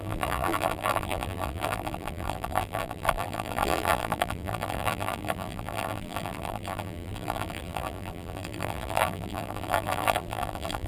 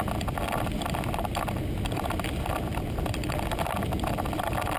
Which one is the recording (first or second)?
second